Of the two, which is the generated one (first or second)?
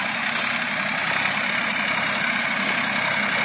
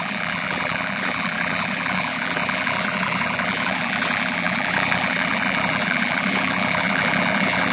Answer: second